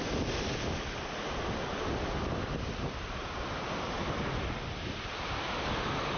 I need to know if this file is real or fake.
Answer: real